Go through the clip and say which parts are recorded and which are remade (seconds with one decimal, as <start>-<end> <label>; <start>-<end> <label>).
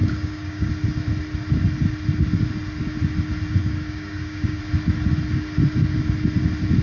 0.0-0.7 remade; 0.7-3.6 recorded; 3.6-4.6 remade; 4.6-6.8 recorded